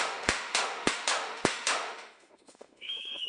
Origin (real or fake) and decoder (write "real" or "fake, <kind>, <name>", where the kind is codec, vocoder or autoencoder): fake, autoencoder, DAC-VAE